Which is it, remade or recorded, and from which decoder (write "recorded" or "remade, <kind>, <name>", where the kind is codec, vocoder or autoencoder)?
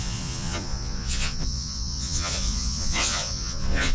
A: remade, vocoder, Vocos